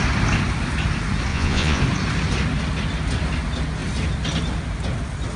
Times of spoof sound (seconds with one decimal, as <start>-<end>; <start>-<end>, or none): 1.3-1.8